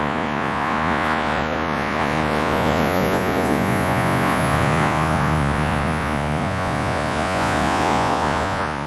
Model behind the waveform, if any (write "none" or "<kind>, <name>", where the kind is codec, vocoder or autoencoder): vocoder, Vocos